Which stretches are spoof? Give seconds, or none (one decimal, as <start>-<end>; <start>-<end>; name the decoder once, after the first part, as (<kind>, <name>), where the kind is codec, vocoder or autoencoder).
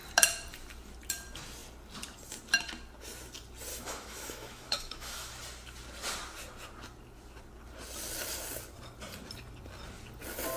3.7-5.3 (autoencoder, DAC-VAE)